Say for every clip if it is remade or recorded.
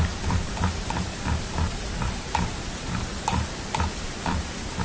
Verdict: remade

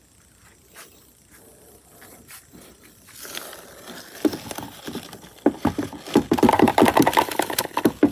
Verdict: recorded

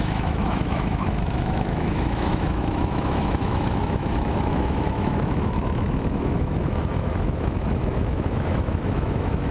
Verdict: remade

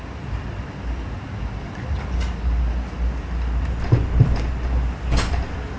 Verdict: recorded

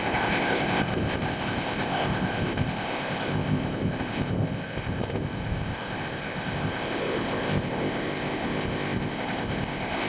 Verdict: remade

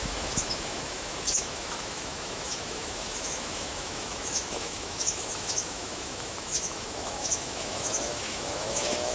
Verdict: remade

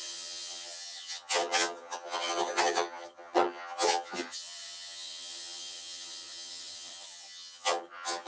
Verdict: remade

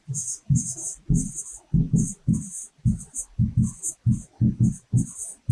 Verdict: recorded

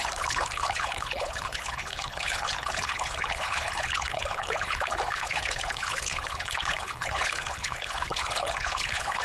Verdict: remade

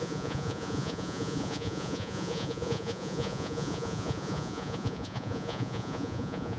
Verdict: remade